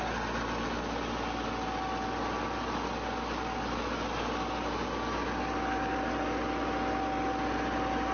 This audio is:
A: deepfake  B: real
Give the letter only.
B